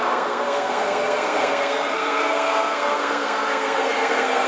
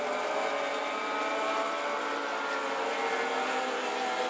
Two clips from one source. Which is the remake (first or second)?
first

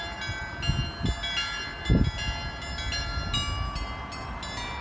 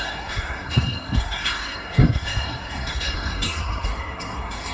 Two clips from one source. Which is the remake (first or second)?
second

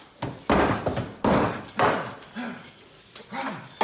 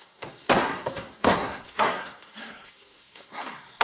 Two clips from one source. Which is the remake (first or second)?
second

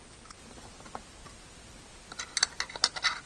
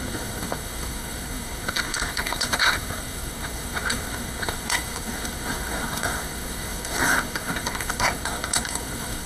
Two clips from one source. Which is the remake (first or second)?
second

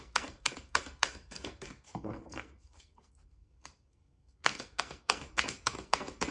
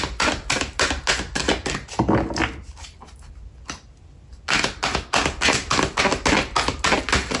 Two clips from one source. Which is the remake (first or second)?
first